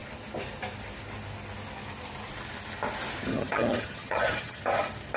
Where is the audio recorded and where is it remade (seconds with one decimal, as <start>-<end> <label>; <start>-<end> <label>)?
0.0-3.3 recorded; 3.3-4.6 remade; 4.6-5.2 recorded